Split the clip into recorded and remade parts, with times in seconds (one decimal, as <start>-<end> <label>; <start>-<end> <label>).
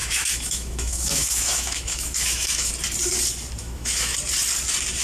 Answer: 0.0-2.7 remade; 2.7-3.6 recorded; 3.6-4.1 remade; 4.1-5.0 recorded